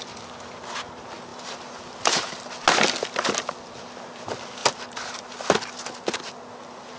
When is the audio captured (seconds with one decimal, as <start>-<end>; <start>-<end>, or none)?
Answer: 0.0-1.3; 2.5-7.0